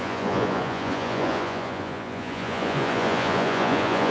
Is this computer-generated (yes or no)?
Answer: yes